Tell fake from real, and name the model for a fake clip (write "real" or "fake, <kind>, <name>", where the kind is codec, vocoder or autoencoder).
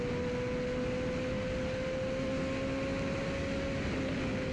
real